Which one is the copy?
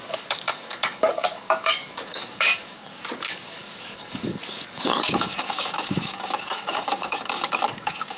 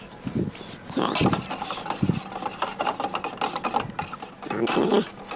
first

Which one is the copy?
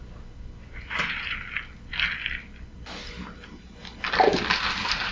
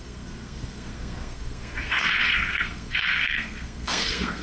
second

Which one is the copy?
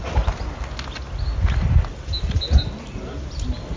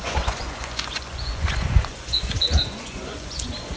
second